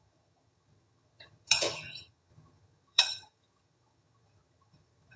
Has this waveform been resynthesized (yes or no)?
yes